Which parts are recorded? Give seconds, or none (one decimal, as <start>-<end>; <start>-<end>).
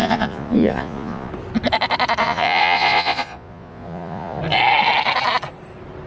1.3-2.2; 4.4-6.1